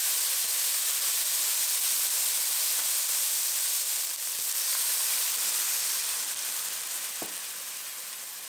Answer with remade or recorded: recorded